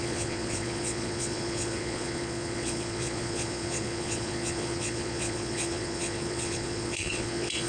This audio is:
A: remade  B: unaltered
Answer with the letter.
A